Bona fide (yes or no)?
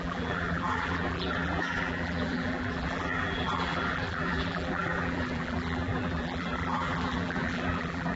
no